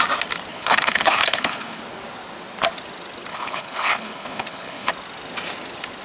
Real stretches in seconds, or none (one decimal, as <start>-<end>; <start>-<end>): 0.0-0.5; 1.8-3.3; 4.9-6.0